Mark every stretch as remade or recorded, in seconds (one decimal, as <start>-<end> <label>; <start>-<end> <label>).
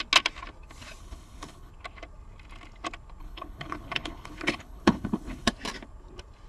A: 0.0-1.0 recorded; 1.0-1.7 remade; 1.7-3.2 recorded; 3.2-5.5 remade; 5.5-6.5 recorded